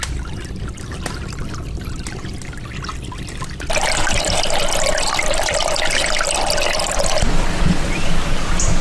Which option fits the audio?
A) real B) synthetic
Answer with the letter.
A